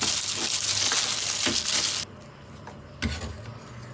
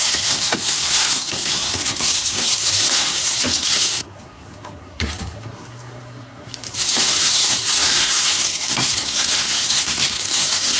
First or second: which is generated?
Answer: second